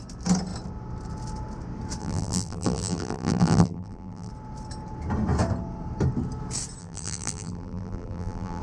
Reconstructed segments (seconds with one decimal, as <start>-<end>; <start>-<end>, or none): 2.0-4.3; 6.8-8.6